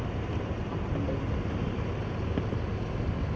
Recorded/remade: recorded